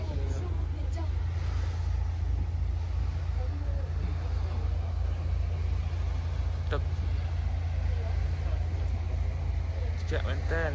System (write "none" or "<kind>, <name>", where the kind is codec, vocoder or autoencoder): none